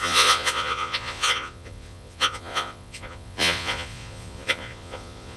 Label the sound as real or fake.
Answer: fake